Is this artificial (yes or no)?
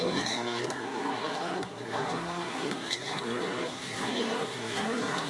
yes